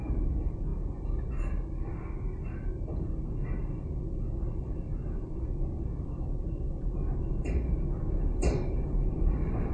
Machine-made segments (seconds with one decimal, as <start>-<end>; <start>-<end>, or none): none